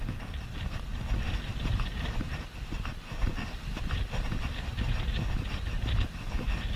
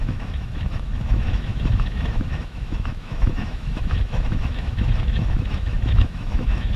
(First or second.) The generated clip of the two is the second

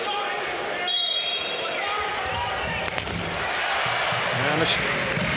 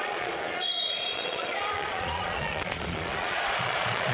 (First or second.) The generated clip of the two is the second